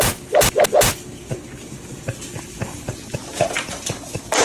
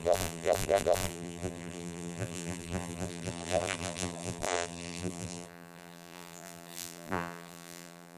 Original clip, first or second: first